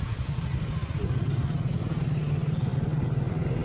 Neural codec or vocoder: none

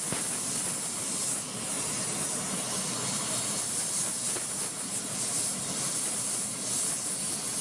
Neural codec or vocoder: none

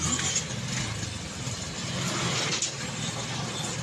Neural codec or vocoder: none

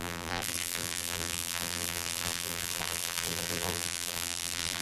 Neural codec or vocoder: vocoder, BigVGAN v2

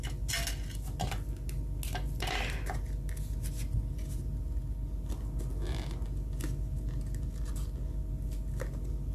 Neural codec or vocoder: none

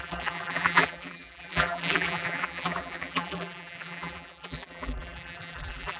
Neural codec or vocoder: vocoder, BigVGAN v2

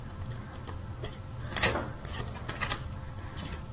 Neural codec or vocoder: none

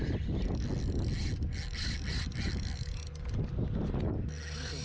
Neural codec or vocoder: none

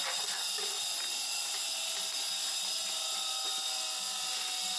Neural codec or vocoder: none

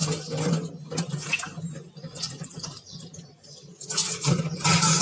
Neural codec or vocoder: vocoder, BigVGAN v2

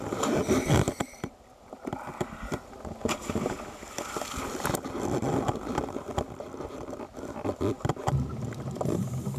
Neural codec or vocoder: none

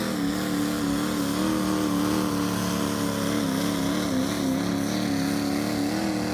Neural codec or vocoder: none